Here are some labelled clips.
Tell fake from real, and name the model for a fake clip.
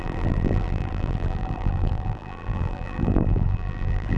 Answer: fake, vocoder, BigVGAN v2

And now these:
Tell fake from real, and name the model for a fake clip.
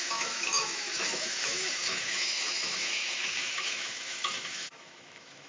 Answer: fake, autoencoder, DAC-VAE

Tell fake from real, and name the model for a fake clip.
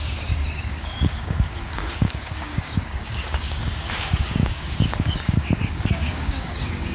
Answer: fake, codec, DAC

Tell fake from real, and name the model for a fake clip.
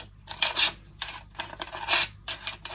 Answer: real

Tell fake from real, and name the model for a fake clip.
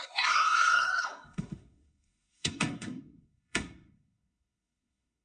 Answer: fake, codec, SNAC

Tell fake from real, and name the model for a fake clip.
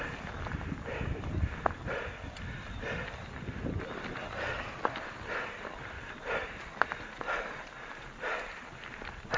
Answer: real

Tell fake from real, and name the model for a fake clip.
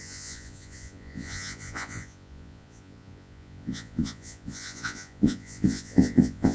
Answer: fake, vocoder, Vocos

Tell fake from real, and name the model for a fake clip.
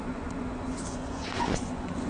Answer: fake, vocoder, Vocos